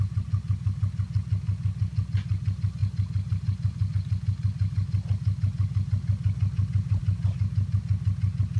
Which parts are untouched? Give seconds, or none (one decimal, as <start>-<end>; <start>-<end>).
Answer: 0.0-8.6